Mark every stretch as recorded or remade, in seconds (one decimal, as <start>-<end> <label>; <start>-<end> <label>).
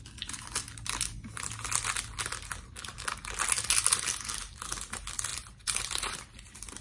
0.0-5.3 recorded; 5.3-6.8 remade